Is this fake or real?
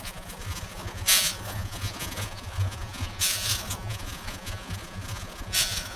fake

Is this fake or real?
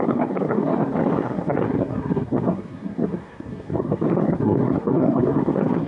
fake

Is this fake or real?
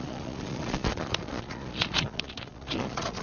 fake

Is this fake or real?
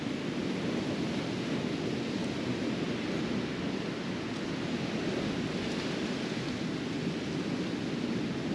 real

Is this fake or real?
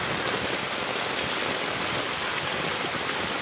real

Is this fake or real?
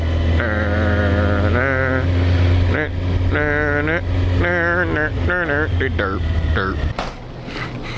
real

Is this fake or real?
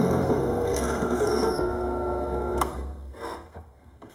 fake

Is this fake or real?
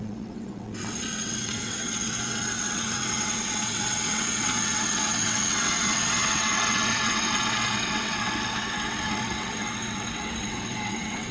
fake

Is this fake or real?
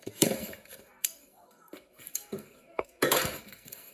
fake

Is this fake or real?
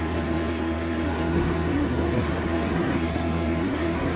fake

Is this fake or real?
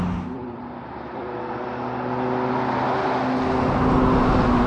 real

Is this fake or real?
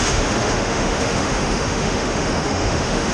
fake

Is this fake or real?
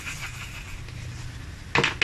real